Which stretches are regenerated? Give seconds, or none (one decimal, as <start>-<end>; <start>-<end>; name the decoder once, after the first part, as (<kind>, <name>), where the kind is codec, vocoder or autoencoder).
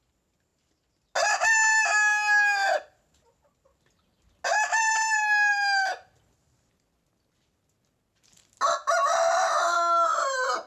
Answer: none